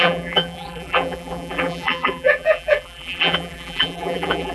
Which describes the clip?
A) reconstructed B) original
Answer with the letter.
A